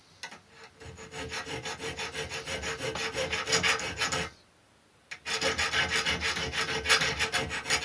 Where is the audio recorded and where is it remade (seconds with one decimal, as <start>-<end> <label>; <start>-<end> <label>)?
0.0-7.8 recorded